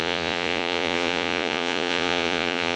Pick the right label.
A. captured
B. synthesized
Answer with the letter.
B